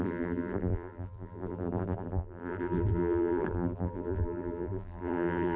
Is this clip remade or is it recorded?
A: remade